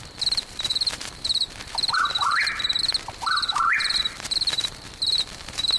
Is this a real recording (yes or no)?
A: no